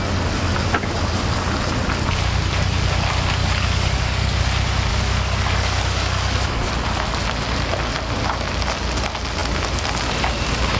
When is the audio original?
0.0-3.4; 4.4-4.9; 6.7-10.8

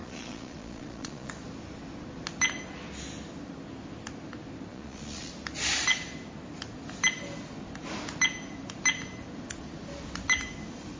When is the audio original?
1.3-4.7; 5.3-11.0

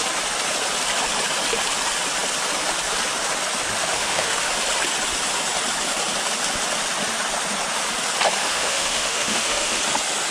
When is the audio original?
0.0-3.8; 4.5-8.4; 9.8-10.3